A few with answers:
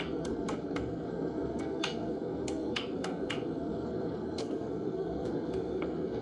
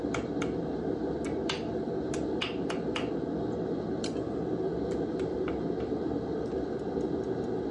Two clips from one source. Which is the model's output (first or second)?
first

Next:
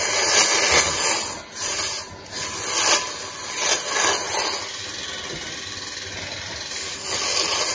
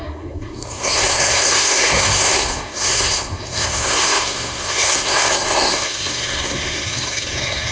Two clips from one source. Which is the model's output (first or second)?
second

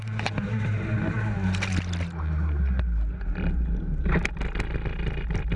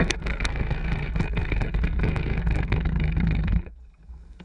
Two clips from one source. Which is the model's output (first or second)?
second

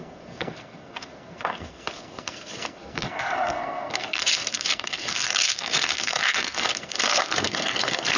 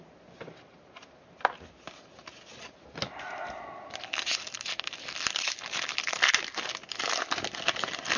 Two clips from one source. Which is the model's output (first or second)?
first